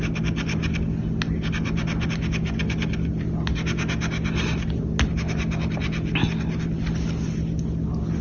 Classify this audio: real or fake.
real